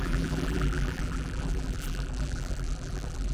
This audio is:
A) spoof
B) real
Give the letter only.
A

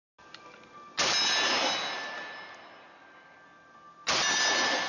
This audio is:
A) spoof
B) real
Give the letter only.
B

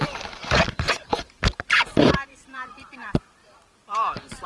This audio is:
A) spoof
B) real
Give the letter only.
A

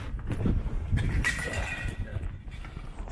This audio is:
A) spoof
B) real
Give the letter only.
B